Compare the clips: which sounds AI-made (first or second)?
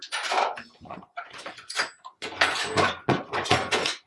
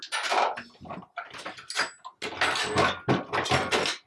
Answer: first